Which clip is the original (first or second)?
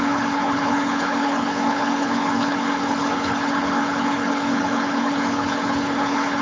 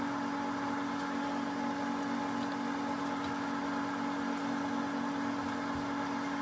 second